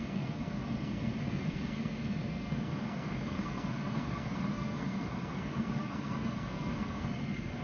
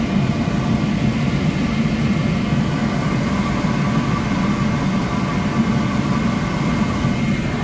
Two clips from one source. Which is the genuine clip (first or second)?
second